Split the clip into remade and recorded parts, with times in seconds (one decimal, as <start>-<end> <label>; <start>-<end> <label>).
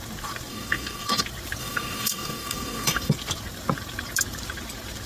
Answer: 0.0-0.5 recorded; 0.5-1.2 remade; 1.2-1.6 recorded; 1.6-3.1 remade; 3.1-5.1 recorded